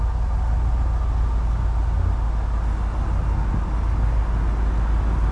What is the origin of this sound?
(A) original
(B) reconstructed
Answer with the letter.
A